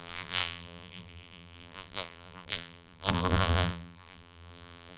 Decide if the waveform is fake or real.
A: fake